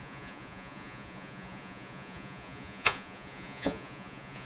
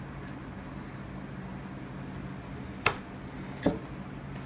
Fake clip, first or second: first